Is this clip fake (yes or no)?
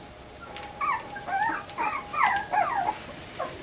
no